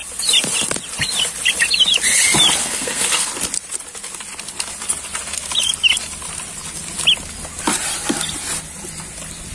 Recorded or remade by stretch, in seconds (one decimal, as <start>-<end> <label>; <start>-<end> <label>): 0.0-2.6 recorded; 2.6-3.3 remade; 3.3-9.5 recorded